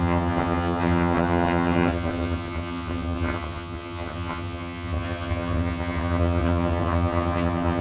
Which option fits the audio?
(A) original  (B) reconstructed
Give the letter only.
B